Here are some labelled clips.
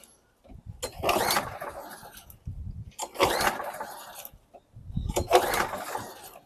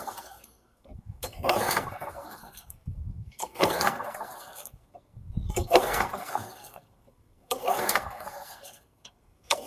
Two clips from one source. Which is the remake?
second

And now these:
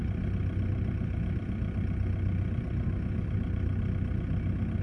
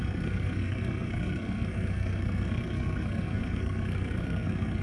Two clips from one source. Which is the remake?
second